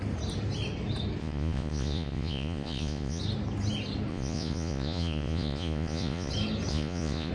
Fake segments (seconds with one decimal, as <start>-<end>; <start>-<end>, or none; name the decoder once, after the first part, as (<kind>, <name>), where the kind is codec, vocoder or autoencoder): 1.2-3.2 (vocoder, Vocos); 4.1-6.3; 6.7-7.3